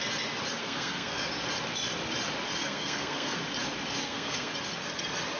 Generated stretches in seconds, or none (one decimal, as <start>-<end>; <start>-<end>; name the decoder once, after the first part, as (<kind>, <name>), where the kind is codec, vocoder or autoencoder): 0.6-1.3 (codec, SNAC); 2.6-3.4; 4.0-4.5